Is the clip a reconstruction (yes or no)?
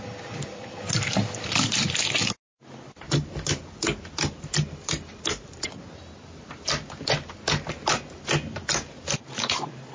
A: no